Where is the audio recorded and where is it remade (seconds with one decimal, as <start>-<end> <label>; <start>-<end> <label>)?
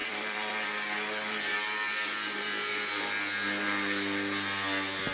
0.0-2.8 remade; 2.8-5.1 recorded